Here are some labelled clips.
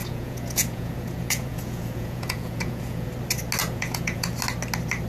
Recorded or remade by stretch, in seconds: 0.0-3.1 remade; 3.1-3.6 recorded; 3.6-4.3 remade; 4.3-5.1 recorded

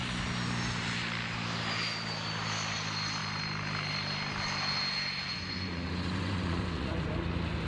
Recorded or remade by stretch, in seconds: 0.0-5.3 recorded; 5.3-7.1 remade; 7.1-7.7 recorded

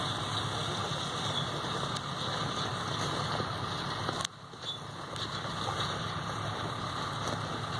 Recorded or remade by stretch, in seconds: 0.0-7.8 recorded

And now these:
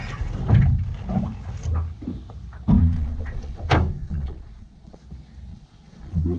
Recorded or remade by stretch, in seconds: 0.0-2.8 recorded; 2.8-3.6 remade; 3.6-4.0 recorded; 4.0-5.0 remade; 5.0-5.5 recorded; 5.5-6.4 remade

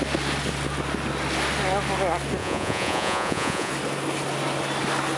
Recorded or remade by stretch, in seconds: 0.0-2.4 recorded; 2.4-3.7 remade; 3.7-5.2 recorded

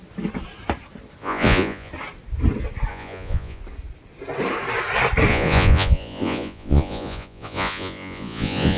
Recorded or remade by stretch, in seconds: 0.0-1.2 recorded; 1.2-1.9 remade; 1.9-2.9 recorded; 2.9-3.6 remade; 3.6-5.3 recorded; 5.3-8.8 remade

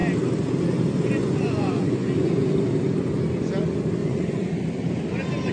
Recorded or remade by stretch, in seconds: 0.0-1.2 recorded; 1.2-2.5 remade; 2.5-4.0 recorded; 4.0-4.5 remade; 4.5-5.5 recorded

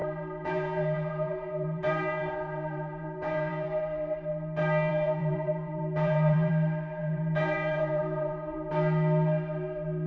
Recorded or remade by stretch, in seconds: 0.0-3.8 remade; 3.8-4.9 recorded; 4.9-6.5 remade; 6.5-7.0 recorded; 7.0-8.7 remade; 8.7-10.1 recorded